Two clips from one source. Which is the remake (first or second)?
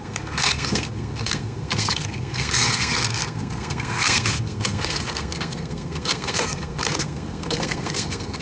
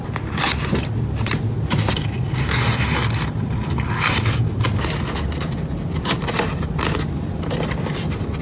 first